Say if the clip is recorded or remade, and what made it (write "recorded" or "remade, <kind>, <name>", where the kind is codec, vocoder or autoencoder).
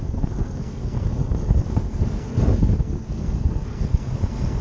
remade, codec, SNAC